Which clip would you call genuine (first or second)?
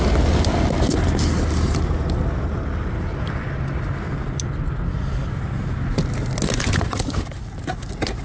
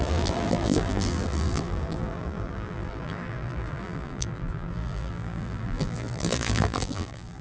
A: first